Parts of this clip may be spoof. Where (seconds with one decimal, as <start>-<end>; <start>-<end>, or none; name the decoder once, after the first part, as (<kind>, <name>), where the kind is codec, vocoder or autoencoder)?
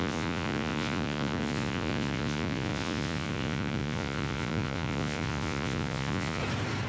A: 0.0-6.4 (vocoder, Vocos)